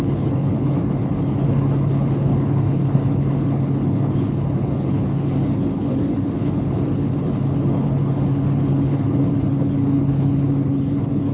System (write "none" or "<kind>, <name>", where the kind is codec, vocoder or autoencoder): codec, HILCodec